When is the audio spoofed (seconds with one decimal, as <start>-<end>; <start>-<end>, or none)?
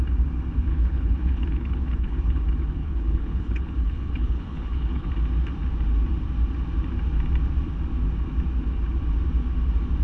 0.7-2.4; 2.8-5.1